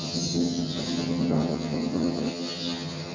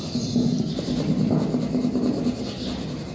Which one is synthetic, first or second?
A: first